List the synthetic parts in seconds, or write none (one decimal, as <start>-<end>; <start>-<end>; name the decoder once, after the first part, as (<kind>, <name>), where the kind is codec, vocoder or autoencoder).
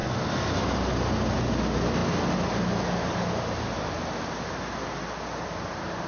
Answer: none